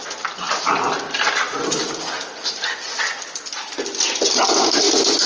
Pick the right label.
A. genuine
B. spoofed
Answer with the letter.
A